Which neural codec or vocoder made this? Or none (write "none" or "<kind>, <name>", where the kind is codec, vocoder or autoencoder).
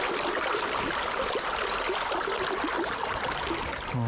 none